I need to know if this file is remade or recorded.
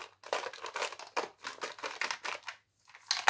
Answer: recorded